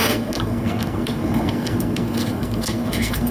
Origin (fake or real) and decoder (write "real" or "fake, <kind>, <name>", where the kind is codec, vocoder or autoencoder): fake, codec, SNAC